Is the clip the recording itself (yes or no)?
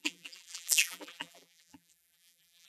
no